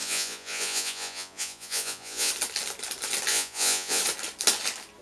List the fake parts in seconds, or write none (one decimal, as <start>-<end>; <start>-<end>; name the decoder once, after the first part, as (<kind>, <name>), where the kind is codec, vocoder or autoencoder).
0.0-2.3 (vocoder, Vocos); 3.3-4.0